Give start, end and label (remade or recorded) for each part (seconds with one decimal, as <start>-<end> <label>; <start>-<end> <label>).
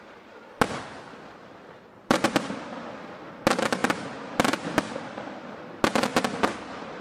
0.0-1.4 recorded; 1.4-2.3 remade; 2.3-7.0 recorded